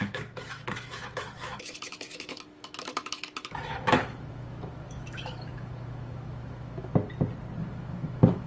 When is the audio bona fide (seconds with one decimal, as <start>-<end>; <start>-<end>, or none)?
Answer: 6.9-7.6